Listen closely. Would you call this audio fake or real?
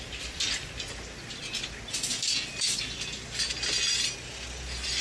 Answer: real